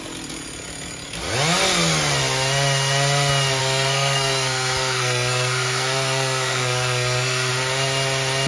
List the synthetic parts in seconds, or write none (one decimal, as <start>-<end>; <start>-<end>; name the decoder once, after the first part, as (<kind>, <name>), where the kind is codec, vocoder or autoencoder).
3.6-7.5 (codec, SNAC)